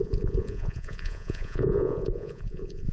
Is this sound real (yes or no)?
no